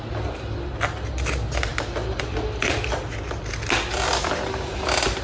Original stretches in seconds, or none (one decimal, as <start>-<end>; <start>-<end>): 0.0-5.2